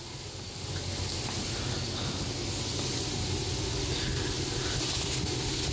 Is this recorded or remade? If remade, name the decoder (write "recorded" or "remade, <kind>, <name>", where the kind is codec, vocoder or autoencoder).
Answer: recorded